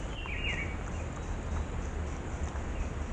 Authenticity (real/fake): real